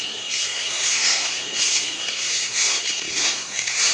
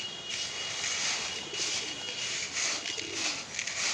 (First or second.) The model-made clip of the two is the first